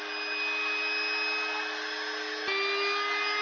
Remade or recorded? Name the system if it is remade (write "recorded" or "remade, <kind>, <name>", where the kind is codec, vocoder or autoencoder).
recorded